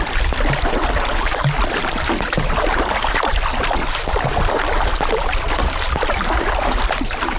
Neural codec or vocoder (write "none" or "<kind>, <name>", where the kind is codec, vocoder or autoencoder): none